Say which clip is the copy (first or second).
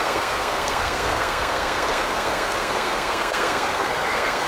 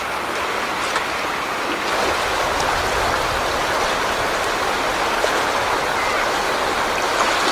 first